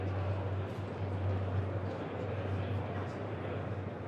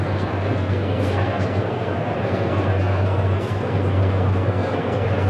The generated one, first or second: second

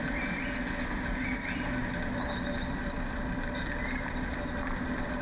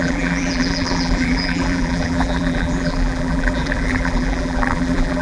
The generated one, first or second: second